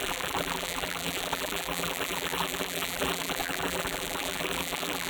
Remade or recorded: remade